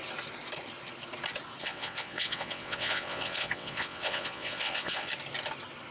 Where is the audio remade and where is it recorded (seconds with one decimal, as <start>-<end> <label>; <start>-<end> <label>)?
0.0-1.6 recorded; 1.6-5.1 remade; 5.1-5.9 recorded